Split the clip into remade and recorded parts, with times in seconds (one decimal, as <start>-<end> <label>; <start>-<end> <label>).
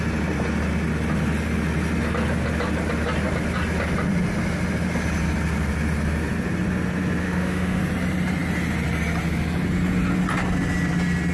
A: 0.0-7.2 recorded; 7.2-7.8 remade; 7.8-11.3 recorded